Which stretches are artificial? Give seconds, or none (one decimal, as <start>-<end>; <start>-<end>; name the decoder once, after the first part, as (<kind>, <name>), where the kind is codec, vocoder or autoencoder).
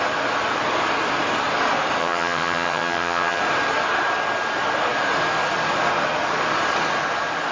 2.0-3.4 (vocoder, HiFi-GAN)